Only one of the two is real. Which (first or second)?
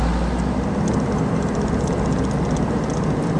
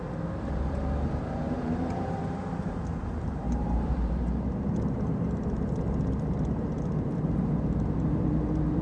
first